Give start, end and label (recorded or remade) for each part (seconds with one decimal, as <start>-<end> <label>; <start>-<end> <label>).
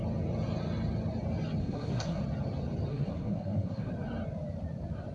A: 0.0-1.6 recorded; 1.6-2.2 remade; 2.2-2.9 recorded; 2.9-3.9 remade; 3.9-5.1 recorded